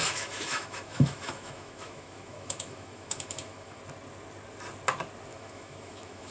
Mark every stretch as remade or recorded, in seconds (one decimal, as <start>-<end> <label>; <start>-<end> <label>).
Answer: 0.0-3.8 remade; 3.8-5.3 recorded; 5.3-6.3 remade